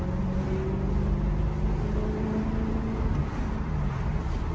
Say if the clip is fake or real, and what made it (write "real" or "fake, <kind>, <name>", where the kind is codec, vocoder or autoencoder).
real